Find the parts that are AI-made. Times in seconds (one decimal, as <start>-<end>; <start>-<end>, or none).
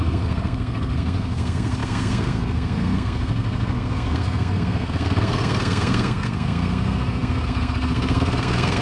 0.0-8.8